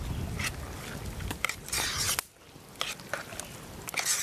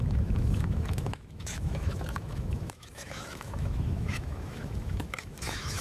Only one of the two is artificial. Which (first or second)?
second